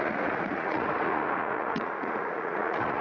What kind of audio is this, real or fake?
fake